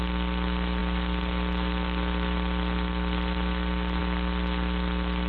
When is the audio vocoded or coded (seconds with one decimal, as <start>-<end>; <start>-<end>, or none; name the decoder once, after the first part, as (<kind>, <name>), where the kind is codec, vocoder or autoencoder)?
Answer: none